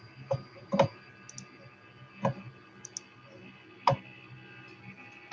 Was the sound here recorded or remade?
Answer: recorded